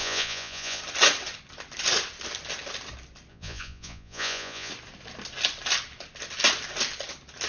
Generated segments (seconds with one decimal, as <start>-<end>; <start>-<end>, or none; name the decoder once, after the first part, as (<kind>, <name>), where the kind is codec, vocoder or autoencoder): 0.0-0.8 (vocoder, Vocos); 3.3-4.7

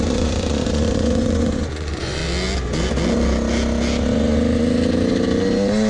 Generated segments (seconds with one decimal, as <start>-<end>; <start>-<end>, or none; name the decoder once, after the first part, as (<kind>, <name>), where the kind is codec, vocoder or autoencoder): 0.0-2.2 (vocoder, Vocos)

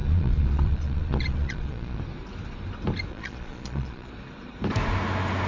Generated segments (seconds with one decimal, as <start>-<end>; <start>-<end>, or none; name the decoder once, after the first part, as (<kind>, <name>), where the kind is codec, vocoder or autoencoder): 0.0-2.0 (vocoder, Vocos); 3.1-4.1

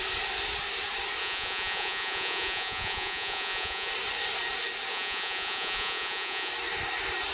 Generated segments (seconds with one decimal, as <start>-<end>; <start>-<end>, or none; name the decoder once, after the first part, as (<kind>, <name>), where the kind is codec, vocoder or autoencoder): 1.2-3.9 (vocoder, Vocos); 4.9-6.5